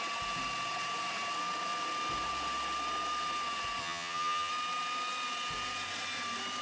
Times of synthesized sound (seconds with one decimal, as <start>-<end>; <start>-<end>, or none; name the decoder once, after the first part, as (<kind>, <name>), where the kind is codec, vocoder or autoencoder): 3.8-4.5 (vocoder, HiFi-GAN)